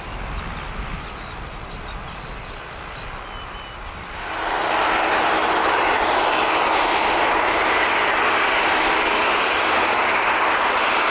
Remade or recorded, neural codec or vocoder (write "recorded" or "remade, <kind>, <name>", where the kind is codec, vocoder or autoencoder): recorded